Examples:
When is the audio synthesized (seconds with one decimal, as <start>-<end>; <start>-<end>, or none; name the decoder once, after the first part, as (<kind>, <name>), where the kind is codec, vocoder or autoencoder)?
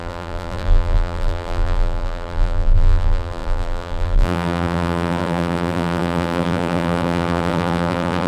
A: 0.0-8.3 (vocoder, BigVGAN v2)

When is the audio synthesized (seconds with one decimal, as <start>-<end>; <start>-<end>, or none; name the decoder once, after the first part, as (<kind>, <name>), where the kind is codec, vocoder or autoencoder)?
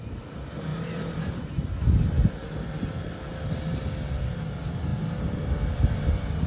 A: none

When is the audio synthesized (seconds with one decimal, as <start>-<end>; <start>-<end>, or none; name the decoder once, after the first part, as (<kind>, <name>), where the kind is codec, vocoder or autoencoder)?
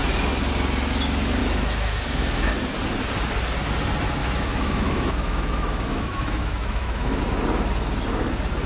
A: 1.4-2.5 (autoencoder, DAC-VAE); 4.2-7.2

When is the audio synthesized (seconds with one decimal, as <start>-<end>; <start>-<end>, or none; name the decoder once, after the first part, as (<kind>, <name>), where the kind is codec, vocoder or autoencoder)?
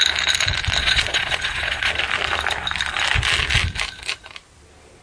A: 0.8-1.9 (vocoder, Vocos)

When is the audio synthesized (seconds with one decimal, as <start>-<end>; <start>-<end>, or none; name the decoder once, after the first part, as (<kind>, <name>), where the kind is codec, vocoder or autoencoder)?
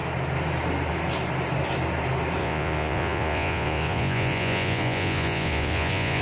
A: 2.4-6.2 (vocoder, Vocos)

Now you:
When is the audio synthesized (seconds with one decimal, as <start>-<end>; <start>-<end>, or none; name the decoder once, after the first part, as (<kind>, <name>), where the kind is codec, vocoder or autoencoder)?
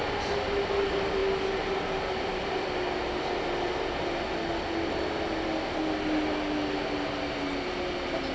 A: none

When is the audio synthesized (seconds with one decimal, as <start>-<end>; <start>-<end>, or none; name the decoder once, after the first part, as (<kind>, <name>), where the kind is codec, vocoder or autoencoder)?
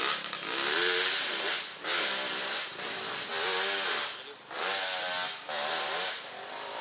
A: none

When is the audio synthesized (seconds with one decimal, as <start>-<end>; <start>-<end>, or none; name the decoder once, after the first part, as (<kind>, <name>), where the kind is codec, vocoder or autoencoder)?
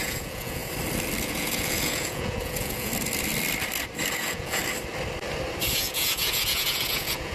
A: 0.0-0.6 (vocoder, Vocos); 1.2-2.9; 4.1-4.6; 5.7-7.3